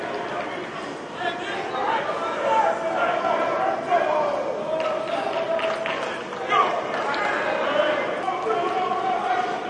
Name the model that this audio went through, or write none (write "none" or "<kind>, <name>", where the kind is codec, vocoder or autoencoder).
none